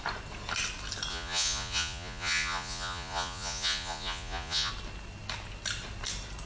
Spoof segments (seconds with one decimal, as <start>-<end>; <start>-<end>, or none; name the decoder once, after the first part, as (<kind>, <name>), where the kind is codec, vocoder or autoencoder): 1.1-4.7 (vocoder, Vocos)